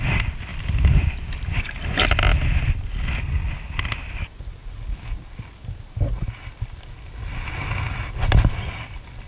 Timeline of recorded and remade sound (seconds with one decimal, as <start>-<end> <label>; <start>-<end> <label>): 0.0-9.3 recorded